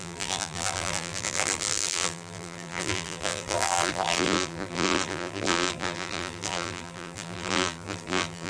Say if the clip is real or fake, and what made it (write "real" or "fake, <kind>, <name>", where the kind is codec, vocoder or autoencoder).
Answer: fake, vocoder, BigVGAN v2